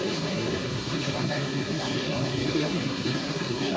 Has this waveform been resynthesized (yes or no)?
yes